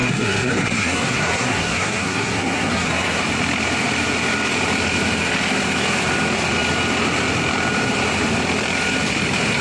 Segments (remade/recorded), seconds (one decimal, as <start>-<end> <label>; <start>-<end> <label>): 0.0-3.2 remade; 3.2-9.6 recorded